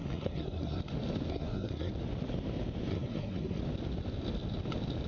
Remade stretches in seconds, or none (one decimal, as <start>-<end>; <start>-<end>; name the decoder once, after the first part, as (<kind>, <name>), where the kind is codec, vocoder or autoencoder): 0.0-0.8 (codec, SNAC); 1.3-1.9; 2.9-3.6